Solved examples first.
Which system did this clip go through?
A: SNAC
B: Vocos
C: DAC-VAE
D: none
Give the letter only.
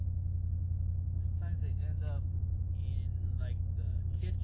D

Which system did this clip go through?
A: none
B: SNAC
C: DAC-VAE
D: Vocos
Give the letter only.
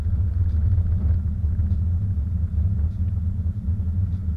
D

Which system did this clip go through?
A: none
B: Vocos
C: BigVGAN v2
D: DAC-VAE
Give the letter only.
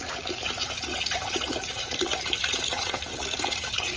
B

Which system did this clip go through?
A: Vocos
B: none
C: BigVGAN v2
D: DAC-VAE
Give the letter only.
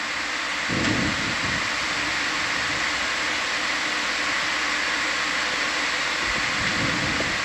B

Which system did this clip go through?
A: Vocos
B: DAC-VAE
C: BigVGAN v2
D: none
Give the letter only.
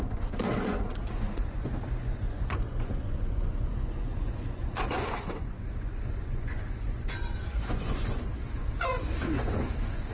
A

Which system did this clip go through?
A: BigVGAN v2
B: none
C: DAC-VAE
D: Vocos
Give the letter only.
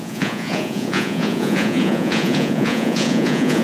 D